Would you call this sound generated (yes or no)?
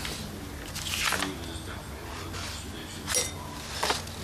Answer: no